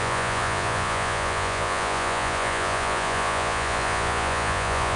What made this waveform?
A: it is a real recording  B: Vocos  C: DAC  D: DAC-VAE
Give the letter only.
B